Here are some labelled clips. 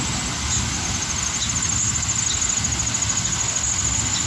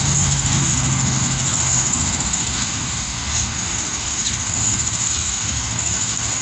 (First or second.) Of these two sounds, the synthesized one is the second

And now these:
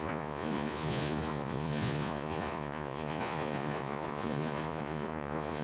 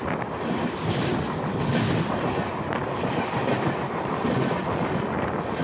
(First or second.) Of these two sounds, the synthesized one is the first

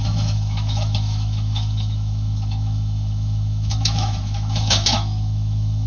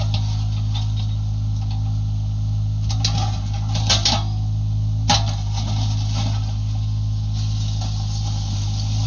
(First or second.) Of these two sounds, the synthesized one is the first